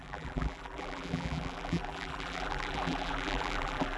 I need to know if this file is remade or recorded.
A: remade